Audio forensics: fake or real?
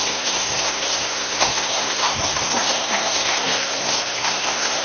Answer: fake